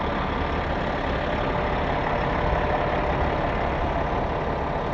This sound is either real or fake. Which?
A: real